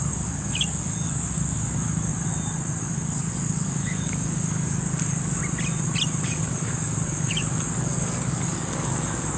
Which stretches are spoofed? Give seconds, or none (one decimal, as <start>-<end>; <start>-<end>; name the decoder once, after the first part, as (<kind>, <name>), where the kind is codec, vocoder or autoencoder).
0.0-2.1 (codec, DAC); 2.8-5.4; 6.2-9.4